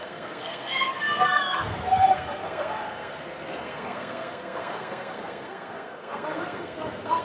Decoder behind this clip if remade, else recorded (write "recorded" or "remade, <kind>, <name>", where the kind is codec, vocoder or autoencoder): remade, codec, SNAC